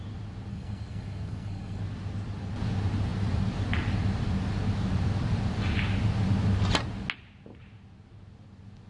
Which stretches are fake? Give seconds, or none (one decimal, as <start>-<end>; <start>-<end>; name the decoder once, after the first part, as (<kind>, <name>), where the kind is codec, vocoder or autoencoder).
0.5-1.8 (codec, SNAC)